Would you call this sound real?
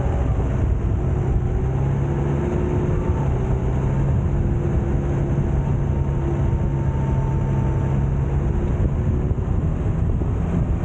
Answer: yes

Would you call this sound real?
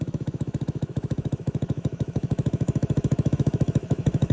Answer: no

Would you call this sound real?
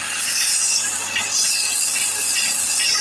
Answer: yes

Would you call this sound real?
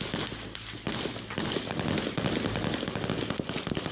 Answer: yes